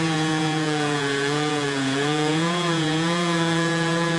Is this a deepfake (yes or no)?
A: yes